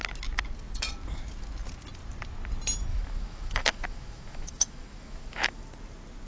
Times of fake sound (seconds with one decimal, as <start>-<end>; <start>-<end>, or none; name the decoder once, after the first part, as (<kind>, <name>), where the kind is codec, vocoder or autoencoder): 2.9-5.6 (autoencoder, DAC-VAE)